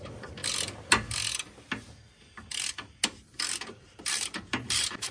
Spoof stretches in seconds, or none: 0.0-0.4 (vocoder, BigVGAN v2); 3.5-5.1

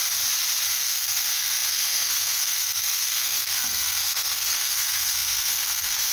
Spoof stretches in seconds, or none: 0.7-6.1 (codec, SNAC)

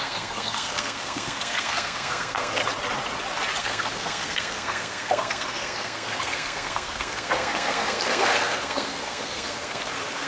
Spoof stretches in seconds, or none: 0.0-2.6 (codec, SNAC); 3.6-10.3

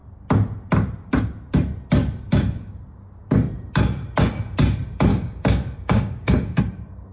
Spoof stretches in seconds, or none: 5.1-6.6 (codec, DAC)